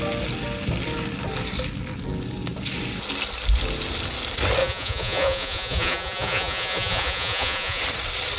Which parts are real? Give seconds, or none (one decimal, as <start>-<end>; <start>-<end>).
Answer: 0.0-4.6; 7.8-8.4